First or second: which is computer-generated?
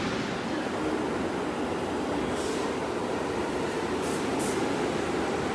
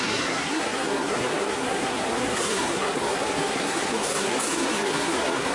second